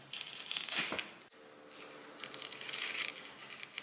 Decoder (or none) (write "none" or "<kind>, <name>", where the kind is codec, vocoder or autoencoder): none